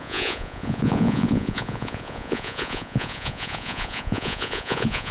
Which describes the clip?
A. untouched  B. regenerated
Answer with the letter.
B